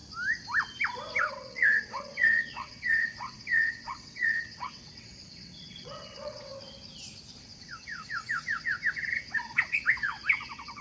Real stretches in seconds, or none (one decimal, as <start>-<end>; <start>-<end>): 0.0-1.2; 6.5-7.4